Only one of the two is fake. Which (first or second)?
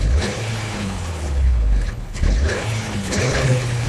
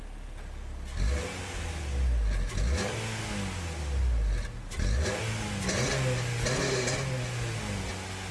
first